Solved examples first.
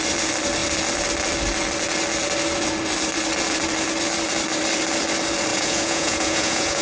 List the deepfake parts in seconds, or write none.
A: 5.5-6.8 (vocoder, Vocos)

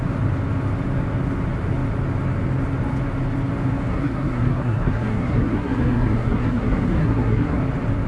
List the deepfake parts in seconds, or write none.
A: 3.9-7.6 (codec, SNAC)

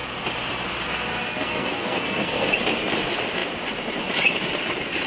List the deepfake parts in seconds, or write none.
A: 1.2-2.5 (codec, SNAC)

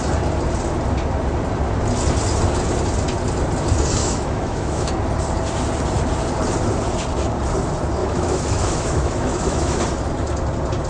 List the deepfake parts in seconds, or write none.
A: 4.0-4.9 (autoencoder, DAC-VAE); 8.0-9.8

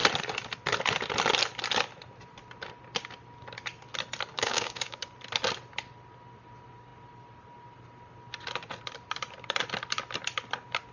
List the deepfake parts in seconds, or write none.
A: 4.3-5.0 (codec, DAC)

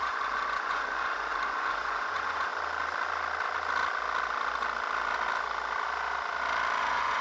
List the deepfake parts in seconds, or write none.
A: 0.0-2.5 (vocoder, Vocos); 6.8-7.2

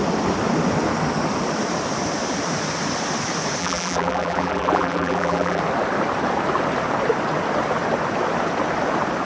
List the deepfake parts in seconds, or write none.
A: 3.6-5.6 (vocoder, BigVGAN v2)

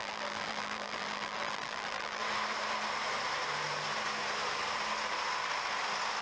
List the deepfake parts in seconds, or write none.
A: 0.0-2.2 (vocoder, BigVGAN v2)